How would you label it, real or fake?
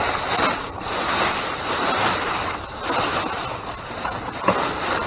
real